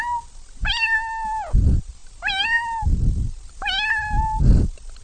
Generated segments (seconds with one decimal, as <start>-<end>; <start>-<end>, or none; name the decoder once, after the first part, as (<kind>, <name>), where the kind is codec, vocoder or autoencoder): none

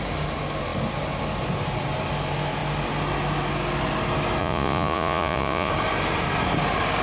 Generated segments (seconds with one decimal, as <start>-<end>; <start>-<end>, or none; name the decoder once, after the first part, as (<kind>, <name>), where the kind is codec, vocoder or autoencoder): 4.4-5.7 (vocoder, Vocos)

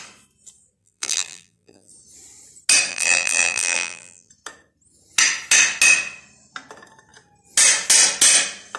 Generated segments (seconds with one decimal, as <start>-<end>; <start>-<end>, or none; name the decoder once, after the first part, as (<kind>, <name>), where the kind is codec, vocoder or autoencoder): 0.8-1.9 (vocoder, BigVGAN v2); 2.9-4.3

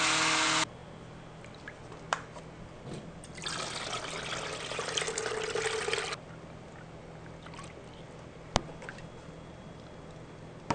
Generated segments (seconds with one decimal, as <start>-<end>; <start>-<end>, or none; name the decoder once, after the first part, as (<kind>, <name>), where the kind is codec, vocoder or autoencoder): none